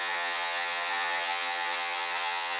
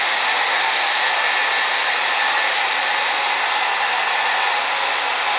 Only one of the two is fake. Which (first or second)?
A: first